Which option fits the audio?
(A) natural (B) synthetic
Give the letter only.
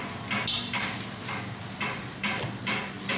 A